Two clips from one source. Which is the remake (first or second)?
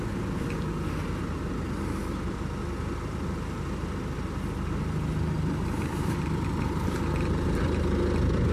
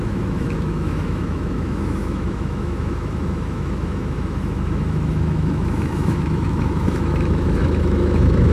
second